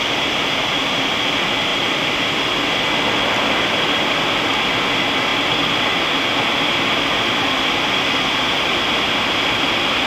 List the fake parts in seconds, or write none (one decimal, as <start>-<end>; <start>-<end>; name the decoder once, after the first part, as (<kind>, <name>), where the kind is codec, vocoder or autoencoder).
none